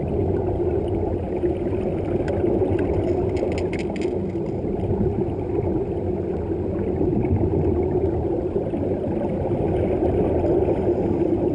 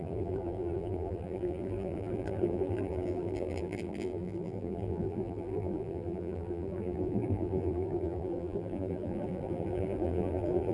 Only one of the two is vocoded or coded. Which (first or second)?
second